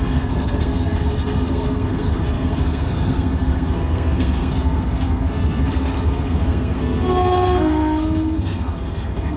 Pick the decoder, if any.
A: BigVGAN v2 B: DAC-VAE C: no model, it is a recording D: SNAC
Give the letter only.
D